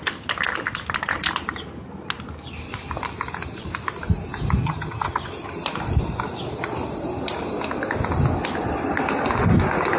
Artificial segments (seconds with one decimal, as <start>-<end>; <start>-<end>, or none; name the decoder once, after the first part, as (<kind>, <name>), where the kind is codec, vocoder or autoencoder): 4.6-5.3 (vocoder, HiFi-GAN)